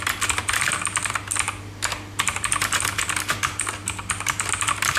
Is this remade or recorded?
recorded